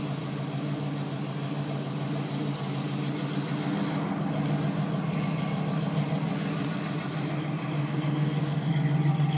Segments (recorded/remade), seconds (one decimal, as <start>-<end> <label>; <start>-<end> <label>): 0.0-7.8 recorded; 7.8-8.7 remade; 8.7-9.4 recorded